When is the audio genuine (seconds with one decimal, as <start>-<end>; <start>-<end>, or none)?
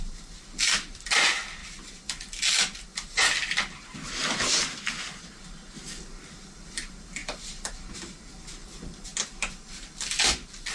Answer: 0.0-10.7